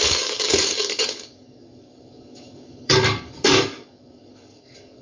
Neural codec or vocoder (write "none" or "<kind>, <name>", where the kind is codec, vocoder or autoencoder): codec, DAC